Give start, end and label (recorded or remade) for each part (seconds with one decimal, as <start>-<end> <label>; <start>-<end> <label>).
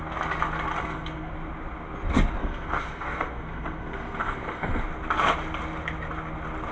0.0-0.8 recorded; 0.8-1.3 remade; 1.3-2.4 recorded; 2.4-4.8 remade; 4.8-6.7 recorded